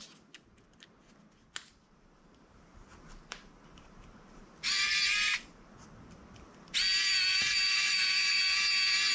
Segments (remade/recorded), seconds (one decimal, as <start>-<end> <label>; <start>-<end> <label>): 0.0-1.7 recorded; 1.7-5.7 remade; 5.7-7.3 recorded; 7.3-8.4 remade; 8.4-9.1 recorded

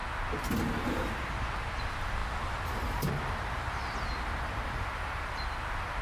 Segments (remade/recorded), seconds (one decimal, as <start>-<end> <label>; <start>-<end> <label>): 0.0-1.8 recorded; 1.8-6.0 remade

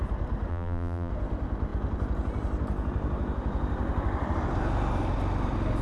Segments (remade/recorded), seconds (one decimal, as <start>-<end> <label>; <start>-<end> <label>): 0.0-0.5 recorded; 0.5-1.1 remade; 1.1-5.8 recorded

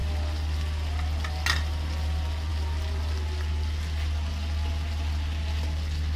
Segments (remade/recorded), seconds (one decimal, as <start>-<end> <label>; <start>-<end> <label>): 0.0-6.2 recorded

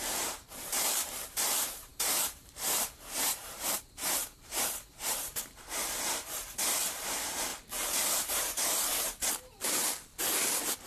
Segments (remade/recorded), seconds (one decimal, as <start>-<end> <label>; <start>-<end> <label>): 0.0-7.5 remade; 7.5-8.2 recorded; 8.2-10.1 remade; 10.1-10.9 recorded

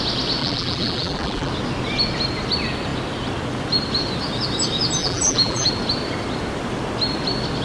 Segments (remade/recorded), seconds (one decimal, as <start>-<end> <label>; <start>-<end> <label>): 0.0-0.4 recorded; 0.4-1.5 remade; 1.5-5.0 recorded; 5.0-5.7 remade; 5.7-7.6 recorded